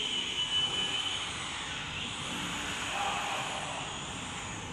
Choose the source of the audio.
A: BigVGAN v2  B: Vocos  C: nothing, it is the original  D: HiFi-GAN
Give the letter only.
C